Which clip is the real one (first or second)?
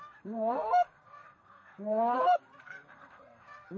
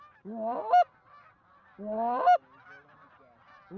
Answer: second